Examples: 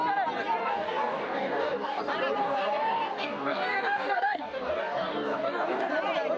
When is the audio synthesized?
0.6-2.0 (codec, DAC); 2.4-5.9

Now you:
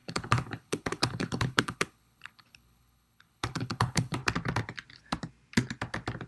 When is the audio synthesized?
0.0-4.2 (codec, HILCodec)

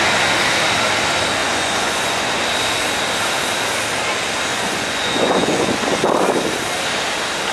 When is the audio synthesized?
1.4-2.4 (vocoder, Vocos); 4.5-6.0

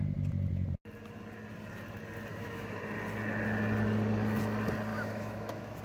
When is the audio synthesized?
2.3-2.8 (autoencoder, DAC-VAE); 4.9-5.8

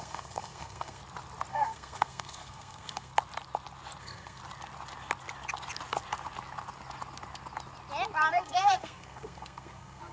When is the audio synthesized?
0.0-1.0 (codec, SNAC); 1.5-3.1; 4.0-4.4; 8.3-10.1

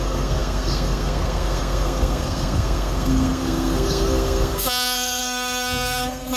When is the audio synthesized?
0.0-6.4 (codec, SNAC)

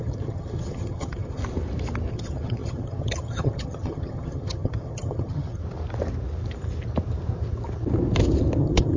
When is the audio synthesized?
0.0-1.4 (vocoder, HiFi-GAN); 2.1-5.6; 8.6-9.0